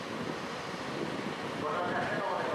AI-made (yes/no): no